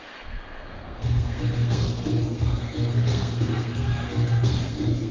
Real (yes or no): no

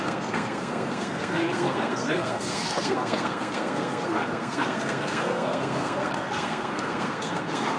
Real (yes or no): no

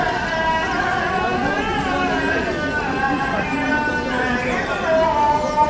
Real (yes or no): yes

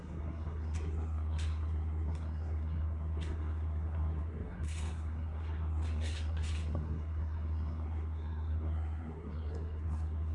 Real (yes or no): no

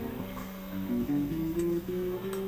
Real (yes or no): no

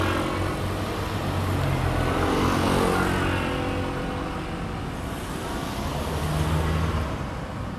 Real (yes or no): yes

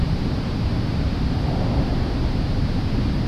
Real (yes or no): yes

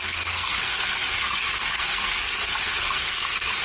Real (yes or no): no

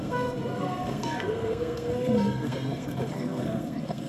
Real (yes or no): no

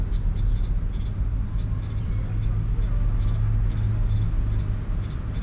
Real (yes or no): yes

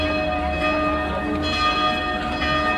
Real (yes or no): yes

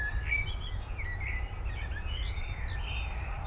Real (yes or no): yes